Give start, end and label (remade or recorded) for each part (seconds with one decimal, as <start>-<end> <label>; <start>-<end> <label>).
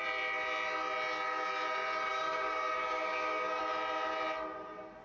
0.0-2.1 recorded; 2.1-3.6 remade; 3.6-5.0 recorded